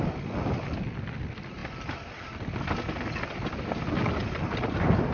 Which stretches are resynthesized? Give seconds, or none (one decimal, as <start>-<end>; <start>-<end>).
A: none